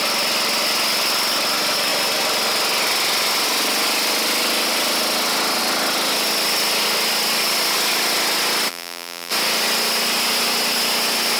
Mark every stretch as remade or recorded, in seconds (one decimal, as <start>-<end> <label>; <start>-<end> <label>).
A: 0.0-8.7 recorded; 8.7-9.3 remade; 9.3-11.4 recorded